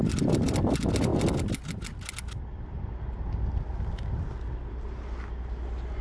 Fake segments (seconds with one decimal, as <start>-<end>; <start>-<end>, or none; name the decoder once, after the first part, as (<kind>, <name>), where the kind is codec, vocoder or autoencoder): none